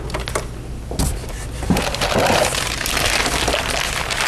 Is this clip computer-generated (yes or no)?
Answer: no